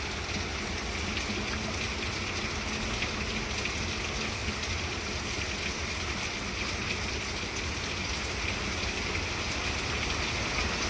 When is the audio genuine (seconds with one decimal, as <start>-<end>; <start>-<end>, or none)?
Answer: 0.0-10.9